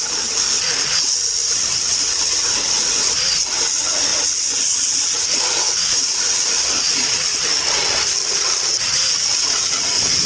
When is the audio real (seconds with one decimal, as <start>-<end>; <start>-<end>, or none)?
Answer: 0.0-1.4; 2.8-4.1; 7.4-8.3; 8.8-10.3